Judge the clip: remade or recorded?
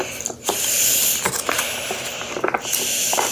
recorded